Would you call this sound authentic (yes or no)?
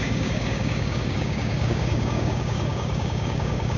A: no